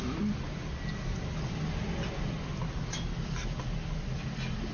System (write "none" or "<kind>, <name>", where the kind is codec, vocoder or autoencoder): none